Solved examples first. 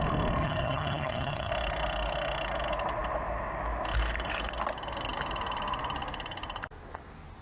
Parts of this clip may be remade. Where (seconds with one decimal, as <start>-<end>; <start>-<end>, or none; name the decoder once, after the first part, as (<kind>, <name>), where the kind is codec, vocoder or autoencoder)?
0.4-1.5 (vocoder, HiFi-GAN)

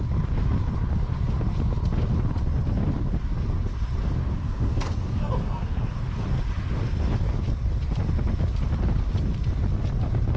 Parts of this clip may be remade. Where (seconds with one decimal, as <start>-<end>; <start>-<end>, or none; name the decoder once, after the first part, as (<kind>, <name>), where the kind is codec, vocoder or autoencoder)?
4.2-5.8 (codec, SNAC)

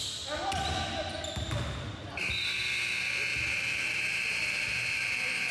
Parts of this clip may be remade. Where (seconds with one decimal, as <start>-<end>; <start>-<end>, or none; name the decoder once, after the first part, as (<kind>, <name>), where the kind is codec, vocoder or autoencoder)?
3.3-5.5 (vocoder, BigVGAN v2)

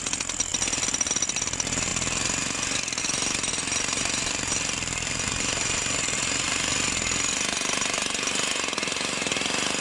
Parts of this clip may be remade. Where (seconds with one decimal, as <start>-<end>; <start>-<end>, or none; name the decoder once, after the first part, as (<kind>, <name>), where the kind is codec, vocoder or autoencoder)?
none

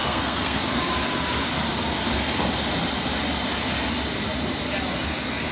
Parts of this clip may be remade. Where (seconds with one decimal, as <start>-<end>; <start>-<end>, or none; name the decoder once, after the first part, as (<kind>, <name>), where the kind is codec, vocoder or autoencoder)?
0.0-0.6 (codec, SNAC)

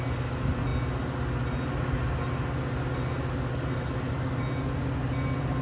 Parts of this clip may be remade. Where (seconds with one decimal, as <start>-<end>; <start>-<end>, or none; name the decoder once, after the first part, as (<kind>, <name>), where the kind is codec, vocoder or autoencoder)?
none

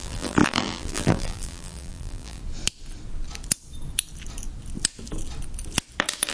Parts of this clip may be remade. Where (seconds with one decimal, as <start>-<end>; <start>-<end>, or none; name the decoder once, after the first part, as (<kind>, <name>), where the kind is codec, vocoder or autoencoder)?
0.0-2.4 (vocoder, BigVGAN v2)